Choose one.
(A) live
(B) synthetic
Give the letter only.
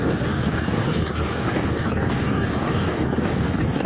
B